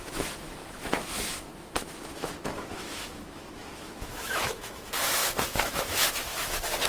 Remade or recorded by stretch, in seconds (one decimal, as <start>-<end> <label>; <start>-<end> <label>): 0.0-6.9 remade